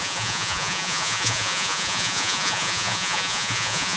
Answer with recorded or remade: remade